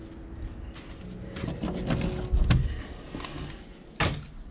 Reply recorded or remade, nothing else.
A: recorded